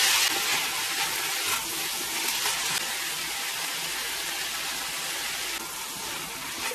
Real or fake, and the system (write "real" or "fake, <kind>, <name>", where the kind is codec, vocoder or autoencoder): real